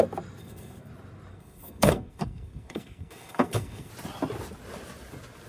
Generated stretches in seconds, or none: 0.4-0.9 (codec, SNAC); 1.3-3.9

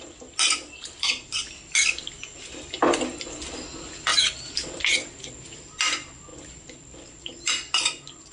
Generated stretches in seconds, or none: none

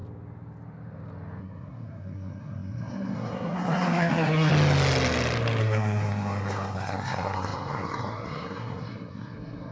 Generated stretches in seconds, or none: 1.4-4.5 (codec, SNAC); 5.6-9.7

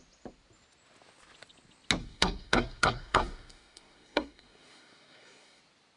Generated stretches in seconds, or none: 2.0-5.6 (codec, SNAC)

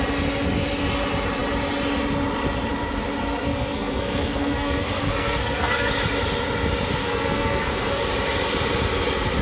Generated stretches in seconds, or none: 3.5-5.9 (codec, SNAC); 7.0-8.0